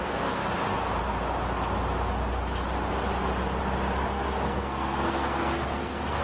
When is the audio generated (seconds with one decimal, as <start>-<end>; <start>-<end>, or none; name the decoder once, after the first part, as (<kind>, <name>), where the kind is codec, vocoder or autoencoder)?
0.0-0.4 (codec, SNAC); 4.1-6.2